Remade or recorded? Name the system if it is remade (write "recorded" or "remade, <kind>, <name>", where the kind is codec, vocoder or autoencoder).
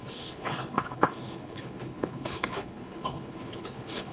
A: remade, codec, HILCodec